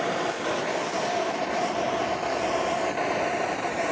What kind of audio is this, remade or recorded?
recorded